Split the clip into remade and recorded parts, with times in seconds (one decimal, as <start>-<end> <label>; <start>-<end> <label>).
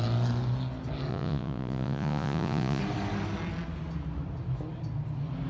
0.0-1.1 recorded; 1.1-2.8 remade; 2.8-5.5 recorded